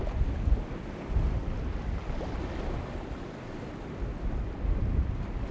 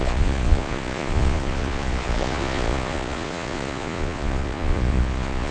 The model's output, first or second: second